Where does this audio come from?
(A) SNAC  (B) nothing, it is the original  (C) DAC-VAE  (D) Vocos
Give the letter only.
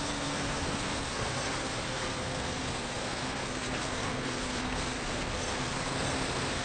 A